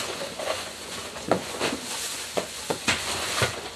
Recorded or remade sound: remade